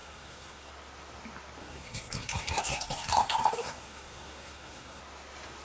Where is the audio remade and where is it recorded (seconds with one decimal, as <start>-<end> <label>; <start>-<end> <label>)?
0.0-0.7 remade; 0.7-1.6 recorded; 1.6-5.0 remade; 5.0-5.6 recorded